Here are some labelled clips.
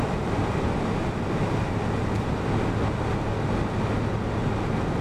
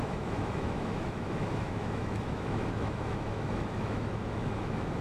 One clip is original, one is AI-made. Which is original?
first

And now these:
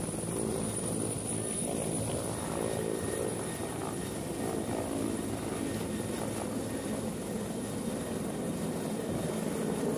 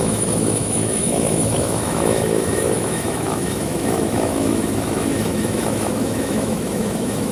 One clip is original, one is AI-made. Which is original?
first